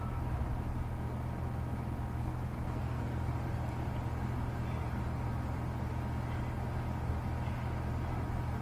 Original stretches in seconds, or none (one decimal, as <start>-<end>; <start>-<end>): 0.0-2.2; 3.3-8.6